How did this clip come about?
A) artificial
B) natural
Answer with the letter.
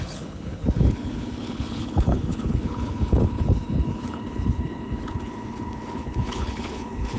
A